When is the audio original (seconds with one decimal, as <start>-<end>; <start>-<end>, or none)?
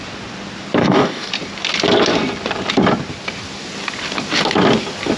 0.0-0.8; 1.3-5.2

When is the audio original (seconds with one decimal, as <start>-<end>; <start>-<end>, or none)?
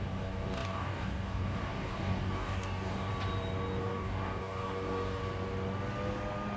3.1-3.8; 5.2-6.6